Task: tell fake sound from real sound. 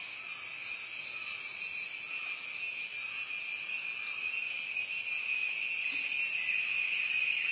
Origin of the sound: real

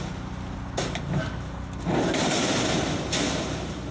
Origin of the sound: real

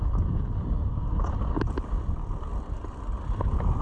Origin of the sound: real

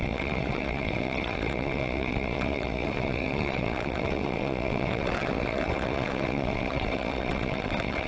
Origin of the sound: fake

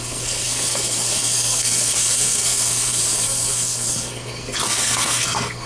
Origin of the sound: fake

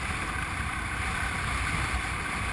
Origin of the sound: real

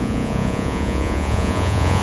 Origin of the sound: fake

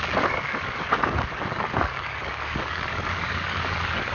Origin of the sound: fake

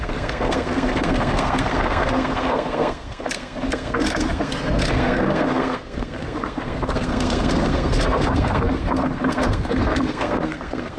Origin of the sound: fake